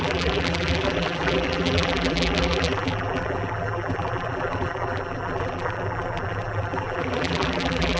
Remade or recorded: remade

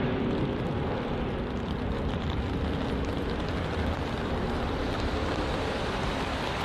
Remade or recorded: remade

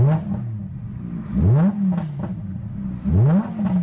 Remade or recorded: recorded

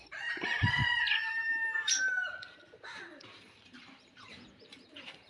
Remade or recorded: remade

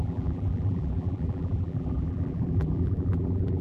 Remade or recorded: remade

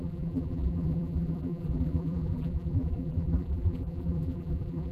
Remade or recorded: remade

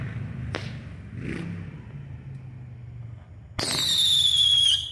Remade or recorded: recorded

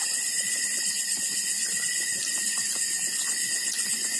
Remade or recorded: recorded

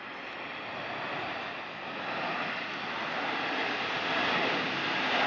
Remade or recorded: recorded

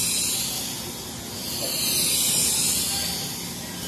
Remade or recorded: recorded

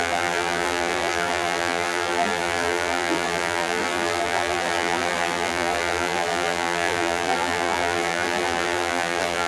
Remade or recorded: remade